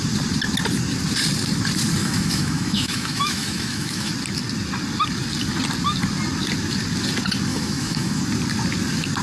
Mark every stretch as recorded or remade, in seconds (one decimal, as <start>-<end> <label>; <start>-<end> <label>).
0.0-2.0 recorded; 2.0-4.1 remade; 4.1-7.5 recorded; 7.5-8.2 remade; 8.2-9.2 recorded